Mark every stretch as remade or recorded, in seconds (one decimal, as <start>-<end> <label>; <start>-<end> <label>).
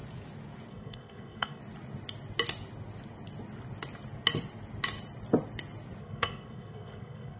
0.0-0.7 recorded; 0.7-1.6 remade; 1.6-6.0 recorded; 6.0-7.4 remade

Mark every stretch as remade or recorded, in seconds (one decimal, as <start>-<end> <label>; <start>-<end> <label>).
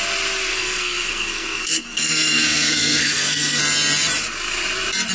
0.0-0.5 recorded; 0.5-3.6 remade; 3.6-5.1 recorded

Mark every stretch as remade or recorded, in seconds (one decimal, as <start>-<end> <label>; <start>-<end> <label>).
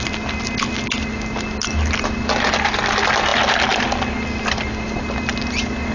0.0-5.9 recorded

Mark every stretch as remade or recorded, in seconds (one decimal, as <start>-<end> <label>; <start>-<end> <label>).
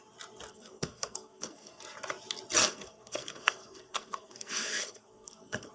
0.0-0.5 recorded; 0.5-1.8 remade; 1.8-2.6 recorded; 2.6-5.7 remade